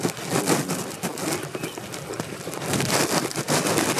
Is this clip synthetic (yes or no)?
no